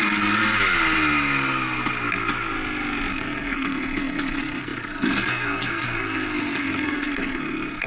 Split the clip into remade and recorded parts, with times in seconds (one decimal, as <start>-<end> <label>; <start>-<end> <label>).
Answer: 0.0-0.4 remade; 0.4-3.1 recorded; 3.1-7.9 remade